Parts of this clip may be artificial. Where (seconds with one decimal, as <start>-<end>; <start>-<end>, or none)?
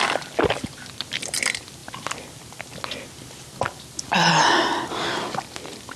none